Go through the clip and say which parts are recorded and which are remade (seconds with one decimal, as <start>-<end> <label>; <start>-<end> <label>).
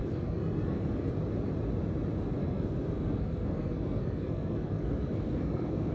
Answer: 0.0-1.1 remade; 1.1-2.4 recorded; 2.4-5.9 remade